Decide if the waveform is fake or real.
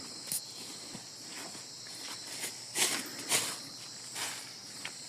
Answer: real